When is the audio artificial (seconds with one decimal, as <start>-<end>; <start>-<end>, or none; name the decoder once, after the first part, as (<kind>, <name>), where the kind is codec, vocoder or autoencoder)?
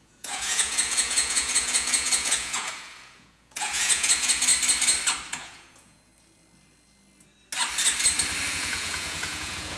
0.0-4.5 (vocoder, Vocos); 5.3-6.1; 8.5-9.8